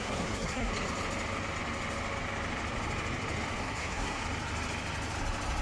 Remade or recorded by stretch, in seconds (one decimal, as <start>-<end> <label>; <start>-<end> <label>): 0.0-0.7 remade; 0.7-3.6 recorded; 3.6-4.2 remade; 4.2-5.6 recorded